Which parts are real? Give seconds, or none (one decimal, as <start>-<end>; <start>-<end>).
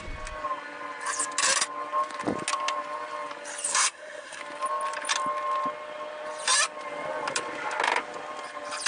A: 0.0-3.7; 4.4-8.9